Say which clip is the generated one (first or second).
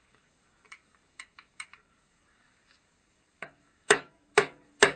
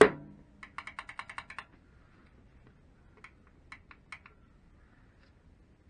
first